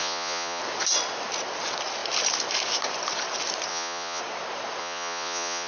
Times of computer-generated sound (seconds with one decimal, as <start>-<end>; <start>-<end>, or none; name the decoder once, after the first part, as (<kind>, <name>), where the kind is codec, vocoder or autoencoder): 0.0-0.6 (vocoder, Vocos); 3.7-4.2; 4.8-5.7